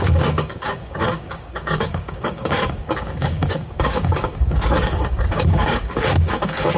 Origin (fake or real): fake